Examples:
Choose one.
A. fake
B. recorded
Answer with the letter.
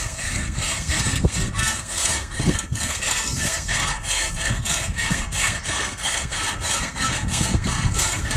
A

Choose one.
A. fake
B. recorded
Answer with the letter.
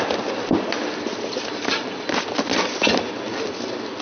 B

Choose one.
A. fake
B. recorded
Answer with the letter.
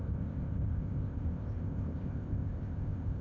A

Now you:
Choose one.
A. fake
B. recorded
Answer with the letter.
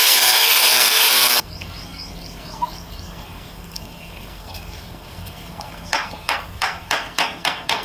A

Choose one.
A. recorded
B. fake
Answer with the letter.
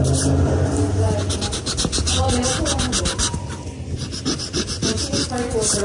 A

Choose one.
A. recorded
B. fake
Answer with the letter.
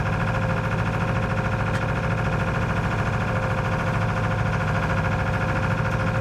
A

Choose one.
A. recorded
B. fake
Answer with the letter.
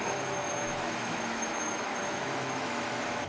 B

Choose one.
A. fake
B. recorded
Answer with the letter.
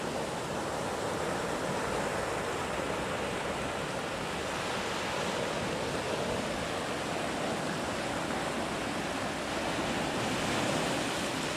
B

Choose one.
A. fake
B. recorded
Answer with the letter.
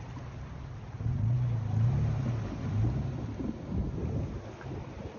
B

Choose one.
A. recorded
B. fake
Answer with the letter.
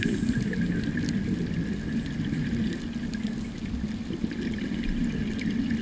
A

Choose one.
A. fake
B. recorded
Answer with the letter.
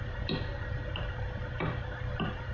B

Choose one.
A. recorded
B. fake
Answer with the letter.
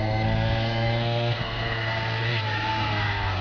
B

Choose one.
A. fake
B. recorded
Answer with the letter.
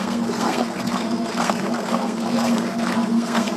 A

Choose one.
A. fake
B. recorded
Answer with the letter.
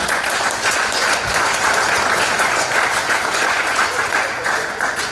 A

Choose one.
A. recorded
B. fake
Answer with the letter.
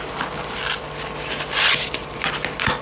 A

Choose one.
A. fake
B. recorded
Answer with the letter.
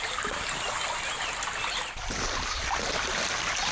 B